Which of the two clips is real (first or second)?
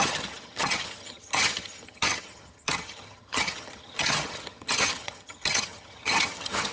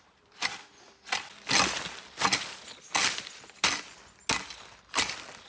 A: second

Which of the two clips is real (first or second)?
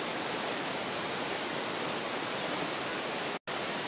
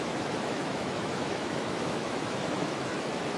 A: first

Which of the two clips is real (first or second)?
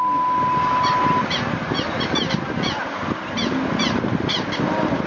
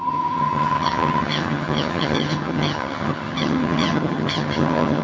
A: first